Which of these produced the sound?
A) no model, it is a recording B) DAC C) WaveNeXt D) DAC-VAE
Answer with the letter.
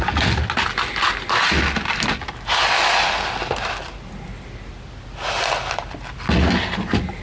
A